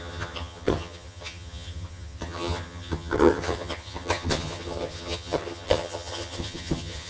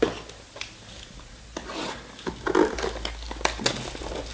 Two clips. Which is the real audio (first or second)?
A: second